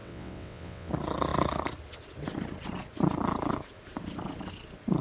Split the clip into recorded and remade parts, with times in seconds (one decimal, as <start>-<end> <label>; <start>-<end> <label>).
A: 0.0-0.9 remade; 0.9-5.0 recorded